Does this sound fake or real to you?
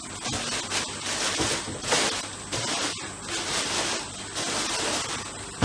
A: real